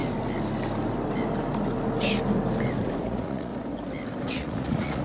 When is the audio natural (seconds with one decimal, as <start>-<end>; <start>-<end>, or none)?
0.0-3.0; 3.5-4.3